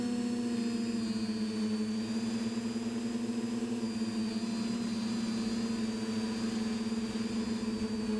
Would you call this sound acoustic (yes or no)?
yes